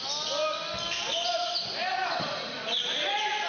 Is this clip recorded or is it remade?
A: recorded